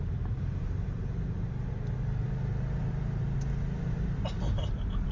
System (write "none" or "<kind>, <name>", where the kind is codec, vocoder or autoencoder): none